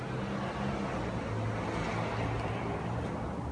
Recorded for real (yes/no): yes